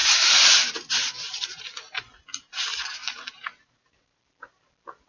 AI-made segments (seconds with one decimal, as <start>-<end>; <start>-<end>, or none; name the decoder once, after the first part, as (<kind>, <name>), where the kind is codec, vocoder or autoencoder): 0.0-1.6 (vocoder, BigVGAN v2); 3.0-4.2